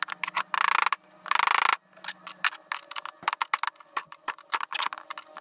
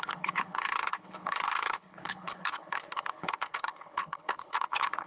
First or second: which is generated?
second